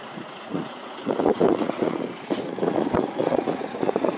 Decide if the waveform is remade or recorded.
remade